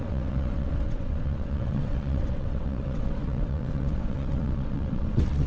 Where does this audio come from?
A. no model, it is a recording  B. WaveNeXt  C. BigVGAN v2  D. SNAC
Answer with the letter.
B